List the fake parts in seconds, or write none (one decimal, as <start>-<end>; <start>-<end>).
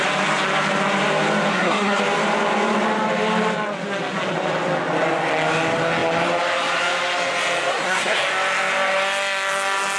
1.5-2.0; 7.7-8.2